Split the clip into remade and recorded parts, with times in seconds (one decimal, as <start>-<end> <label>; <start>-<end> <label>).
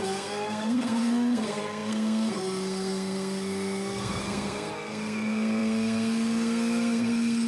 0.0-7.5 remade